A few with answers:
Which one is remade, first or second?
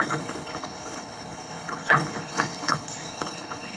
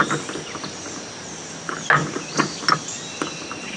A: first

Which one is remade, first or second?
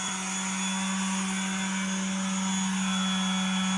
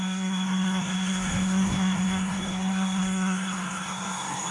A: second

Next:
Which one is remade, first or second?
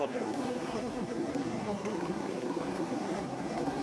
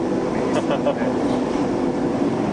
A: first